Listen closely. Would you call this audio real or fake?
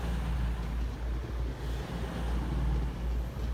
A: real